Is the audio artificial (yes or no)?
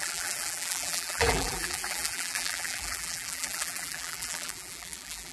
yes